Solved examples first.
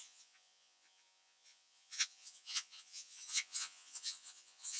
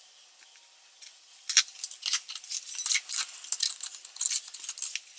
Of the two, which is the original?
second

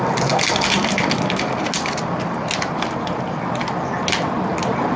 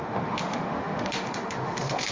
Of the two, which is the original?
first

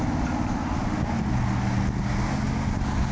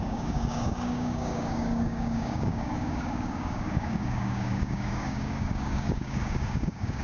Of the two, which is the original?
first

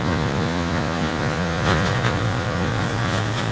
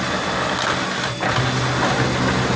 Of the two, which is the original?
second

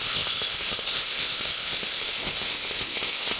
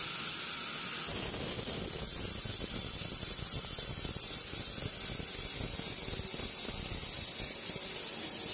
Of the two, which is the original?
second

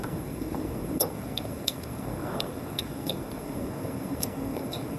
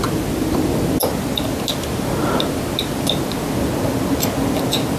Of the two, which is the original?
second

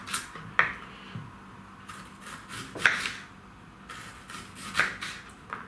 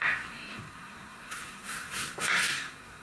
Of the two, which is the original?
first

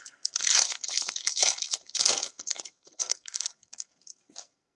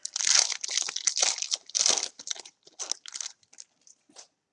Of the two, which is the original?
second